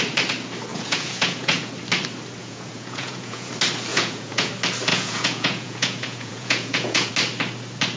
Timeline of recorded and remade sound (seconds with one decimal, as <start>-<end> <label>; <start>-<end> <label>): 0.0-0.7 recorded; 0.7-1.7 remade; 1.7-2.4 recorded; 2.4-3.5 remade; 3.5-3.9 recorded; 3.9-4.5 remade; 4.5-4.9 recorded; 4.9-7.1 remade; 7.1-8.0 recorded